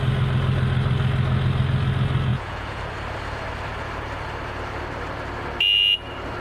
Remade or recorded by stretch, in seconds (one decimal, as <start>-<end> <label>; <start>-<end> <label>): 0.0-2.3 recorded; 2.3-2.8 remade; 2.8-6.4 recorded